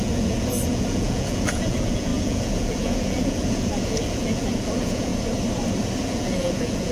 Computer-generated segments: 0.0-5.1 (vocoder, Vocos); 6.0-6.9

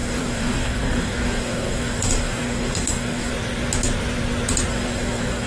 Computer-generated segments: 0.0-3.3 (codec, DAC); 4.7-5.5

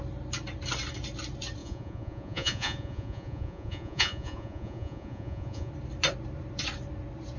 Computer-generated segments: 1.6-5.7 (vocoder, Vocos)

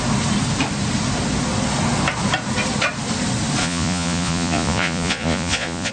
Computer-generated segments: 3.6-5.9 (vocoder, Vocos)

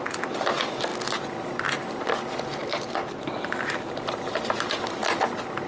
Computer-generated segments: none

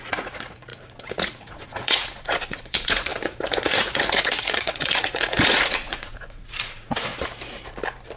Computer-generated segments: 0.0-7.1 (vocoder, Vocos)